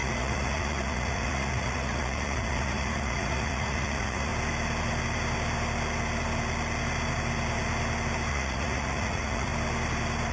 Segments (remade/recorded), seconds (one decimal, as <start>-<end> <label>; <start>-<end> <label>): 0.0-4.3 remade; 4.3-8.3 recorded; 8.3-9.5 remade; 9.5-10.3 recorded